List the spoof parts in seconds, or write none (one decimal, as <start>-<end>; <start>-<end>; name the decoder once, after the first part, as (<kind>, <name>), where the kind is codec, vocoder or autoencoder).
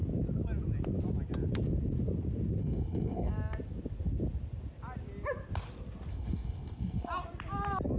2.6-3.3 (codec, SNAC); 6.1-7.1